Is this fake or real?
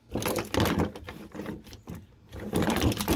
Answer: real